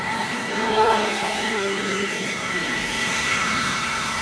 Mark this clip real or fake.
fake